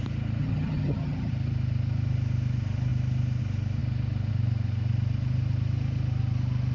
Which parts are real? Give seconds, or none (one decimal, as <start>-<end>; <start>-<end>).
0.0-0.4; 1.3-6.7